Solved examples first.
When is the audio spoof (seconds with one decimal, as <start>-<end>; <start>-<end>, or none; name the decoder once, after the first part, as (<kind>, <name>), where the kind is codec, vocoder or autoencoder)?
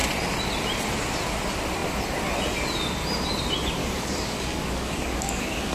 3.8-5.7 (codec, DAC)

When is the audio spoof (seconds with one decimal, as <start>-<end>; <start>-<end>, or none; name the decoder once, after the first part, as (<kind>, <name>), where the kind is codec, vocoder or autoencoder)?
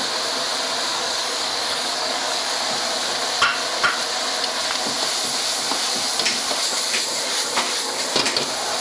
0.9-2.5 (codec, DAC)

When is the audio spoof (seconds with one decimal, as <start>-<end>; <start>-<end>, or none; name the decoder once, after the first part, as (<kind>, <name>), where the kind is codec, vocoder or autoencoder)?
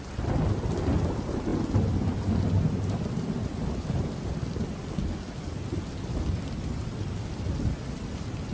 none